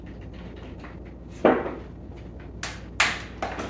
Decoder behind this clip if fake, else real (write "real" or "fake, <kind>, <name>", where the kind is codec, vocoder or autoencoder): real